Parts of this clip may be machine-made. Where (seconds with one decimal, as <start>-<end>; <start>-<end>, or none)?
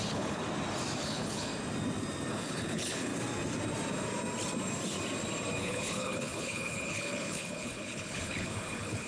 0.0-0.4; 1.0-1.5; 2.3-3.1; 5.6-9.1